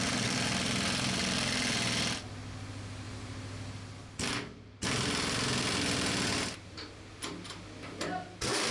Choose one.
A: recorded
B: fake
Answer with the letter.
A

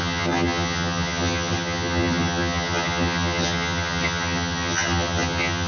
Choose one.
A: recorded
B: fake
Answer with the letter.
B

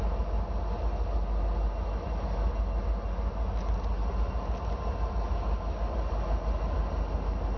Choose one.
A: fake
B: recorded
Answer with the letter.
B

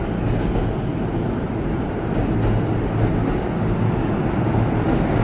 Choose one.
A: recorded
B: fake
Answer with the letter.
A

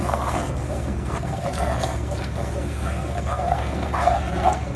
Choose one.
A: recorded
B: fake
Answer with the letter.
B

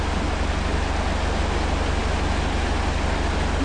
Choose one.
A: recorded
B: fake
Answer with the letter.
A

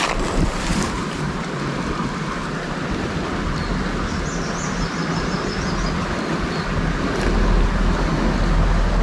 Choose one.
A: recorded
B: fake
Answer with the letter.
A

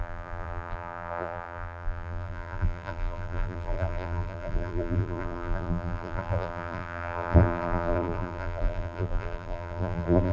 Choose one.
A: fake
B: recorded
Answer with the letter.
A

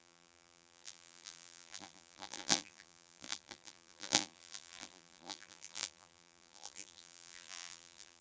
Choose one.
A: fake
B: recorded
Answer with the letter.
A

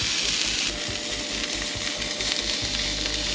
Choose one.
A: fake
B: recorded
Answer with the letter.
B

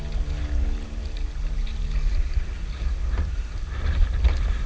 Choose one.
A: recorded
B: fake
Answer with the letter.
A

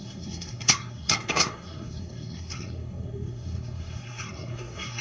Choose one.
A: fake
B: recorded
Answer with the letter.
A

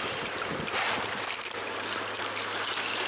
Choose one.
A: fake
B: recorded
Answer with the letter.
B